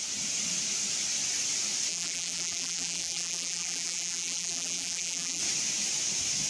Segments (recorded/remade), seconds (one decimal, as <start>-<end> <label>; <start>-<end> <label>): 0.0-1.9 recorded; 1.9-5.4 remade; 5.4-6.5 recorded